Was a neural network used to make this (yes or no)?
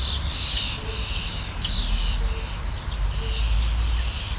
no